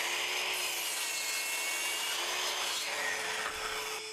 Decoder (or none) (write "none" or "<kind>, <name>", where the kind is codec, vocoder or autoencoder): none